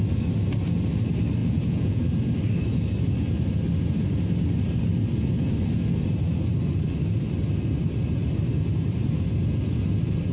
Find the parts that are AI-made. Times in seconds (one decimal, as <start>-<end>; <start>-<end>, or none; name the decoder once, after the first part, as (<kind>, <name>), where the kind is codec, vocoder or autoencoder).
1.4-2.0 (vocoder, Vocos)